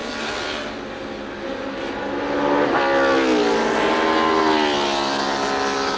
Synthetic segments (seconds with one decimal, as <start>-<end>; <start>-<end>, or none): none